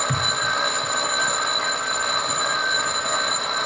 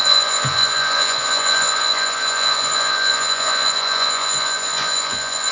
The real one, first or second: first